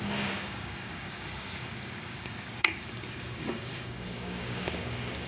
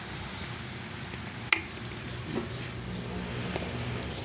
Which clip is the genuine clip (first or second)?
second